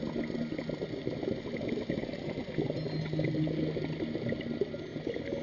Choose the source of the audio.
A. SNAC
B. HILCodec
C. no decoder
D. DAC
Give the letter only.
C